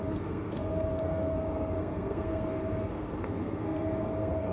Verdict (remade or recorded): remade